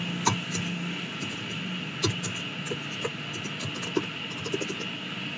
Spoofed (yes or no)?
no